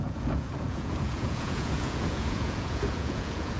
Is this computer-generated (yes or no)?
yes